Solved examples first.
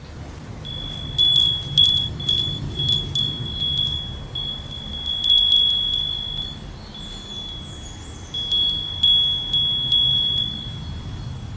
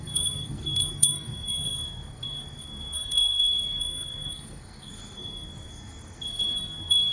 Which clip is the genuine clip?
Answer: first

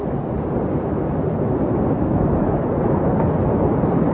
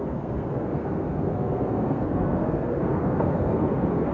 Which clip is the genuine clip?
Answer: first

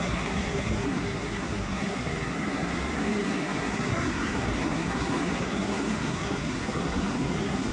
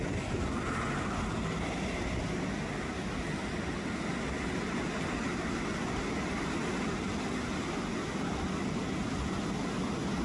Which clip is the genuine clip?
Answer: second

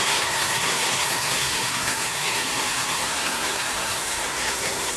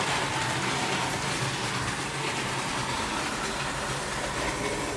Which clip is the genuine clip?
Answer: second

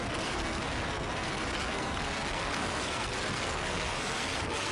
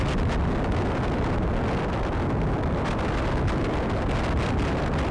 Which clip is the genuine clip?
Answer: second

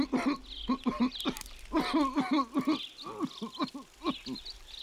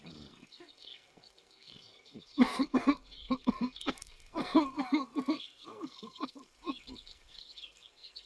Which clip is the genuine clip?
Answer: first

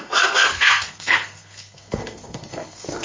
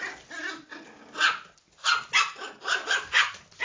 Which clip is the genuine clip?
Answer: second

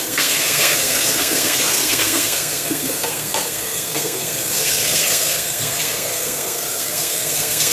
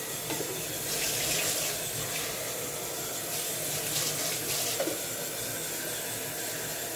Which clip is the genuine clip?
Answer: second